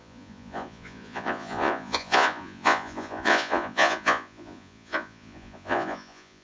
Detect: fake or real fake